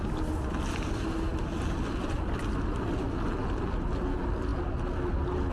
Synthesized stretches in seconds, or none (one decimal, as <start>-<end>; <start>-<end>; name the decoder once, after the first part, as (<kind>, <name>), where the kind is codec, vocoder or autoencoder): none